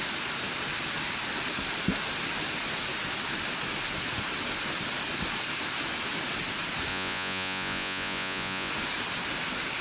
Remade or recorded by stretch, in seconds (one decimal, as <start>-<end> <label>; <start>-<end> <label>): 0.0-6.9 recorded; 6.9-8.7 remade; 8.7-9.8 recorded